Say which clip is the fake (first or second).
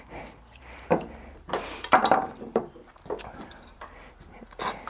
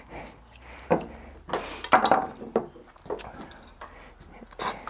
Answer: first